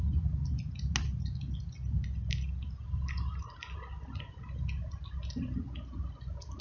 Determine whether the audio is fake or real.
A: real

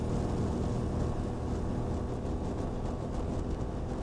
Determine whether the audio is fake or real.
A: real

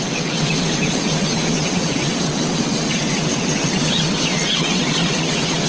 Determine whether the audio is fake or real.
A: fake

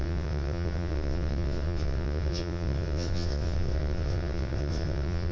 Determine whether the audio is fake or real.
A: fake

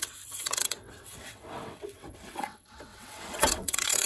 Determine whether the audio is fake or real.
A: fake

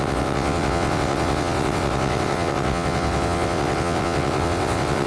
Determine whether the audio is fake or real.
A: fake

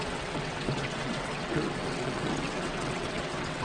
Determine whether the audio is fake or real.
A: fake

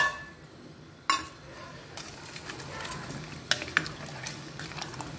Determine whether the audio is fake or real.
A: real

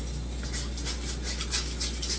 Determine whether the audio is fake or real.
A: real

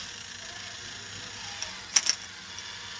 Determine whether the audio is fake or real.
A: real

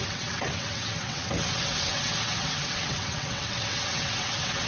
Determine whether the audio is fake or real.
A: fake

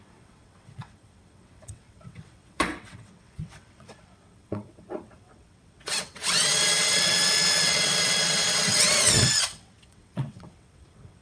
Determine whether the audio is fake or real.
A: fake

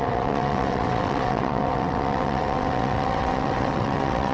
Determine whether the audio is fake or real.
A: fake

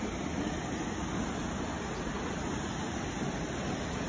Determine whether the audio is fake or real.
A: real